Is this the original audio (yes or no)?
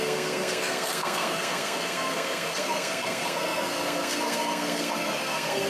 no